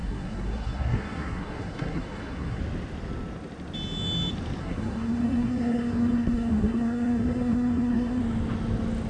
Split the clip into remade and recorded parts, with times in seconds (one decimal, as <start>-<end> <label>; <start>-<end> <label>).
0.0-2.6 remade; 2.6-4.6 recorded; 4.6-8.2 remade; 8.2-9.1 recorded